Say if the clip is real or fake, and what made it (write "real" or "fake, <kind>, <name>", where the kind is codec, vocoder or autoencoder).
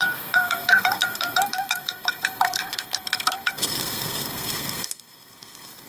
fake, codec, SNAC